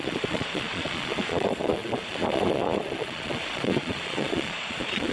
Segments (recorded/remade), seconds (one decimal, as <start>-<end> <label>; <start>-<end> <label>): 0.0-5.1 remade